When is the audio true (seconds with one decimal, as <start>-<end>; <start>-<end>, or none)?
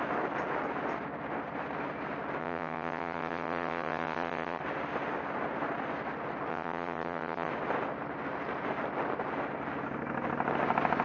0.0-2.4; 4.6-6.5; 7.5-11.0